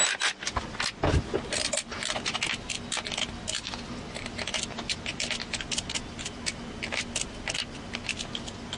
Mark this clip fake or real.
real